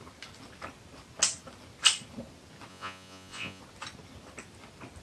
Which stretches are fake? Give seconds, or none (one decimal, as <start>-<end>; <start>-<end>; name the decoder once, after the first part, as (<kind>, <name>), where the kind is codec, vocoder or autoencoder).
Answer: 2.7-3.6 (vocoder, Vocos)